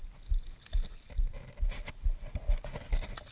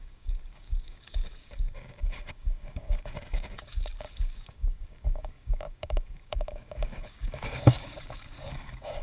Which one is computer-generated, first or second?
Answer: second